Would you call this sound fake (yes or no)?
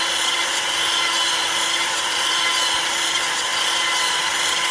yes